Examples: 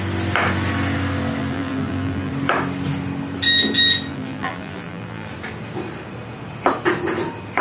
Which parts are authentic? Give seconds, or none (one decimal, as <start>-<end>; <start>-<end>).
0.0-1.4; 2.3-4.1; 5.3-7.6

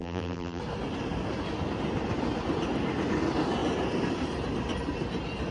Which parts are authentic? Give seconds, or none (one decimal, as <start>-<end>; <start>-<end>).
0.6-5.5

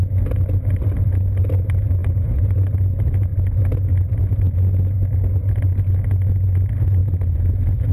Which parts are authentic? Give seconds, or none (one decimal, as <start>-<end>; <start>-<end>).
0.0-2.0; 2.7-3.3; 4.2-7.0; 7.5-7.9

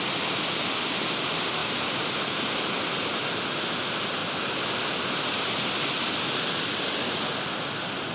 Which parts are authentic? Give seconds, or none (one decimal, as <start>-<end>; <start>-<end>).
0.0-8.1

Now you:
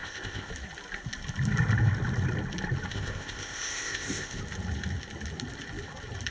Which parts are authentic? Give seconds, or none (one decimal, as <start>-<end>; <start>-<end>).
0.5-2.9; 4.4-6.3